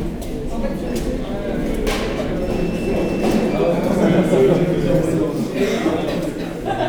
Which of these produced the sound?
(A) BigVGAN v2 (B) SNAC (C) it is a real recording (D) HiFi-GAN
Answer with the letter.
C